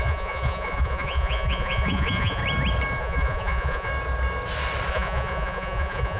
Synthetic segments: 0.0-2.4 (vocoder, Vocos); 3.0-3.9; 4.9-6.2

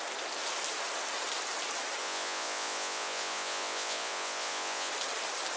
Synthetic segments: 2.0-4.9 (vocoder, Vocos)

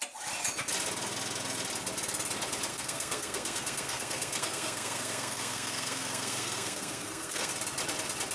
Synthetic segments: 2.7-7.5 (codec, SNAC)

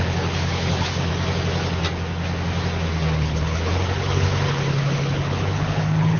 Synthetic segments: 0.0-1.1 (codec, HILCodec); 3.2-6.2

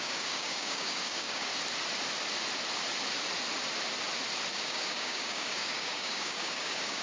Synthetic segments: 0.0-1.5 (codec, DAC); 4.5-7.0